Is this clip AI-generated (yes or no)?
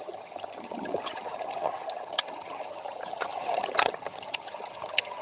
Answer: yes